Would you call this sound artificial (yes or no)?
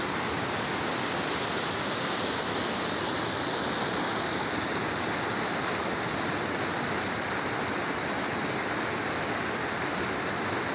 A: no